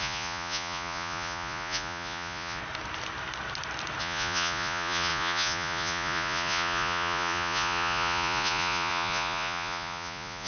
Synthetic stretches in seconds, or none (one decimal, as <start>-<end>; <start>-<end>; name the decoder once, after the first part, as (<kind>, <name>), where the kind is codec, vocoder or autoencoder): 0.0-2.6 (vocoder, Vocos); 4.0-10.5